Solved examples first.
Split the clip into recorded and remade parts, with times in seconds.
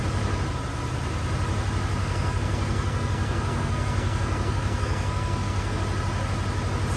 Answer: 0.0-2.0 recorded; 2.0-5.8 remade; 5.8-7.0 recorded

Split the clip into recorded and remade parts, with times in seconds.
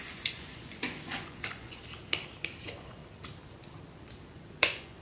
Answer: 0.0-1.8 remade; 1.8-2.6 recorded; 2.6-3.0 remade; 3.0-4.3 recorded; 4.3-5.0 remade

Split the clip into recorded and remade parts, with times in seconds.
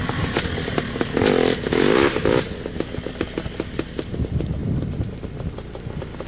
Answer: 0.0-6.3 recorded